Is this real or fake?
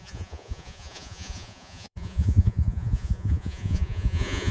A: fake